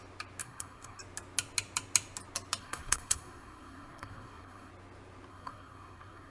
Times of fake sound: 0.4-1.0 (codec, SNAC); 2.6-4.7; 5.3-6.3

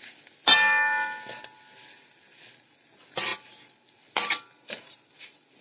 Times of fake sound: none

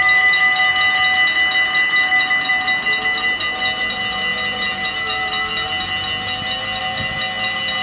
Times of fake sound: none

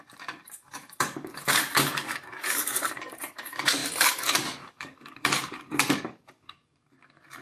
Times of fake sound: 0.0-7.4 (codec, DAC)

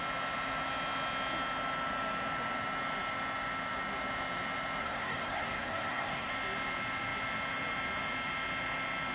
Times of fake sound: 4.8-6.3 (codec, SNAC)

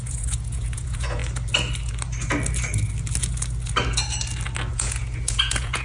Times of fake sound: 0.0-1.2 (vocoder, Vocos); 4.7-5.8

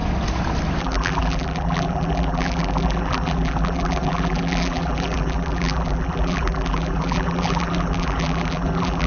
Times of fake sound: 0.8-9.1 (vocoder, BigVGAN v2)